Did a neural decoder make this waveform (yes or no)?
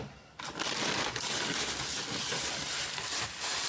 no